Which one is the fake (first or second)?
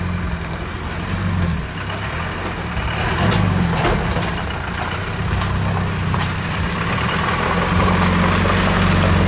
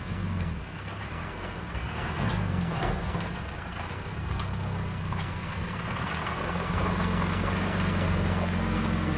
second